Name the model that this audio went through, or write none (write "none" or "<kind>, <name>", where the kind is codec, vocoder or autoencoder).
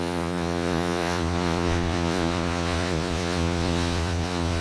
vocoder, Vocos